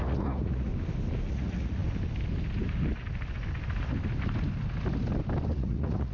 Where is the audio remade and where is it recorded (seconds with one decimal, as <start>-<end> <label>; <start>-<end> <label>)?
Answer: 0.0-0.7 remade; 0.7-1.3 recorded; 1.3-1.8 remade; 1.8-5.5 recorded; 5.5-6.1 remade

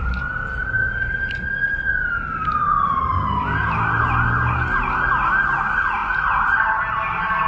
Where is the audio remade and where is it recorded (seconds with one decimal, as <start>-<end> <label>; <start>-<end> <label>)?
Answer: 0.0-7.5 recorded